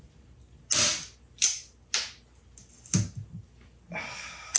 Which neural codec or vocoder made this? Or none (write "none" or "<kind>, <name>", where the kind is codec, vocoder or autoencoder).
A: none